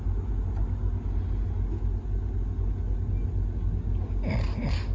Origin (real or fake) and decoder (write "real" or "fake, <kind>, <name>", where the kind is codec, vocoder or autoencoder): real